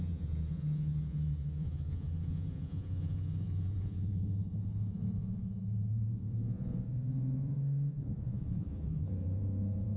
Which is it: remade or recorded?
remade